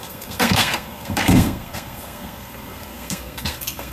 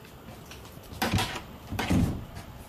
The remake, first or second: first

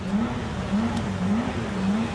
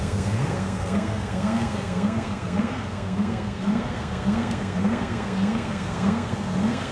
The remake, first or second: second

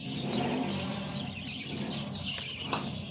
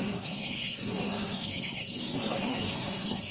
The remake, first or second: second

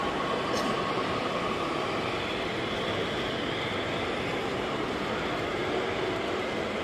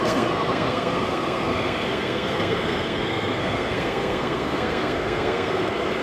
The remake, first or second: second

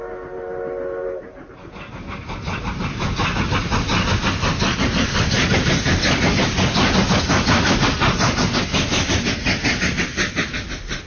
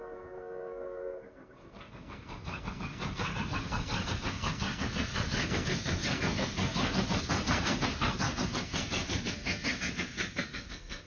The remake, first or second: second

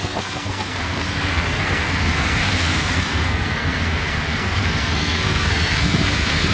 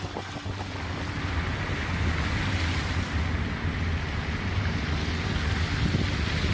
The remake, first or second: first